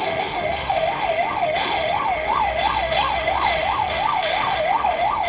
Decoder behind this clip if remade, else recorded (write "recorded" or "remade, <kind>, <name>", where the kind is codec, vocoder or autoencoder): remade, autoencoder, DAC-VAE